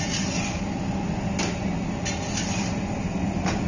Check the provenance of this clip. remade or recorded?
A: recorded